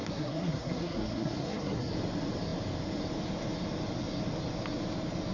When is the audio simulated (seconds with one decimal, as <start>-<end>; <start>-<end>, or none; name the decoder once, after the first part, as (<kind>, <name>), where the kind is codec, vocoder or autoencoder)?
0.0-1.9 (codec, SNAC)